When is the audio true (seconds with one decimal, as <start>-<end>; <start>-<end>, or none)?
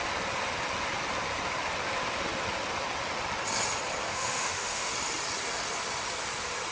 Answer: 0.0-4.1; 4.9-6.7